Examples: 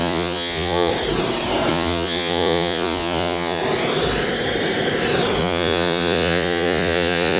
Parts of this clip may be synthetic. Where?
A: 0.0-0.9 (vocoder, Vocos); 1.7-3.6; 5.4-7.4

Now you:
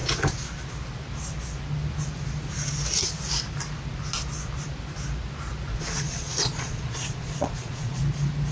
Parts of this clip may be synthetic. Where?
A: 5.7-8.0 (vocoder, Vocos)

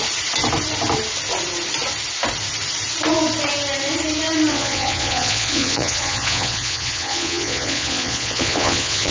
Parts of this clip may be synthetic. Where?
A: 4.5-9.1 (vocoder, Vocos)

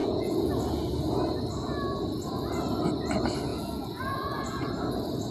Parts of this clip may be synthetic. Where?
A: 0.0-0.5 (vocoder, Vocos); 3.5-4.7

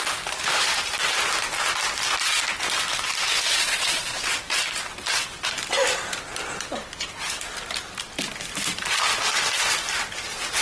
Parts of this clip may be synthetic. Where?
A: 3.5-4.2 (vocoder, Vocos)

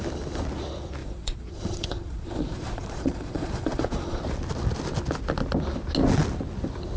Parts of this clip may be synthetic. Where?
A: 1.0-4.2 (vocoder, Vocos)